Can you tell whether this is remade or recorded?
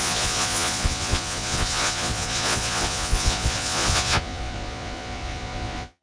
remade